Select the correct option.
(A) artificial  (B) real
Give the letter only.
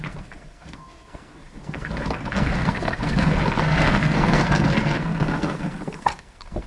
A